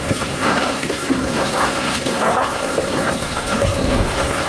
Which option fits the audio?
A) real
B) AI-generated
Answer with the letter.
B